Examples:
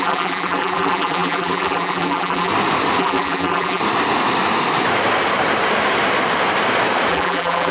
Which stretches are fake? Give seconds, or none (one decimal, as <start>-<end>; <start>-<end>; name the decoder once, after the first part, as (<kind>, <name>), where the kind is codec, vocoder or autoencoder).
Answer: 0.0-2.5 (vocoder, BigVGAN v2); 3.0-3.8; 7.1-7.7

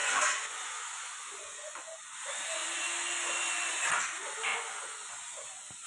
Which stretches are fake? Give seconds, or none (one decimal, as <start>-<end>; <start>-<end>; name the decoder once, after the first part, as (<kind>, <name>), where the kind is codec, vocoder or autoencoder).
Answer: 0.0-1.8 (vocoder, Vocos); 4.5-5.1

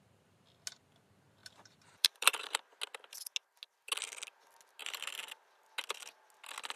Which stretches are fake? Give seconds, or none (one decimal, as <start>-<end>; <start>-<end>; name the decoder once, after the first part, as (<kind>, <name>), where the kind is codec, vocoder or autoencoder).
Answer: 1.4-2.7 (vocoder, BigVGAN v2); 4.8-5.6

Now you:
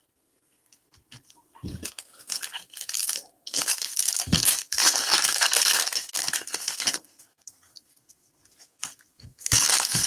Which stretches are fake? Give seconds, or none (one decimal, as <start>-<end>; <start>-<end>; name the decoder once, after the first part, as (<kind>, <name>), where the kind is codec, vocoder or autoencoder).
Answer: 0.0-10.1 (codec, SNAC)

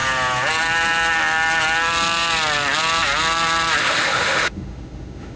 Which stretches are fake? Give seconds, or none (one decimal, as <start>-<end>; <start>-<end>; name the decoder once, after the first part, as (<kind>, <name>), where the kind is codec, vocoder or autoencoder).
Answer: 3.8-5.4 (autoencoder, DAC-VAE)

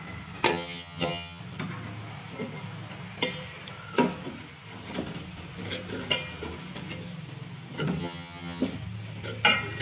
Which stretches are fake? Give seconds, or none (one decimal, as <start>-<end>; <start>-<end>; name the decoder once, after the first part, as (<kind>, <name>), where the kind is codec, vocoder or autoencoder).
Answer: 0.5-1.4 (vocoder, HiFi-GAN); 8.0-8.6

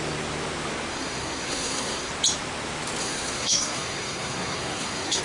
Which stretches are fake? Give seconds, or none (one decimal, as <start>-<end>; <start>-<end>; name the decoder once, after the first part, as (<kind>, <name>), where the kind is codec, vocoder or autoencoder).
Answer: 0.9-2.1 (codec, SNAC); 3.0-5.2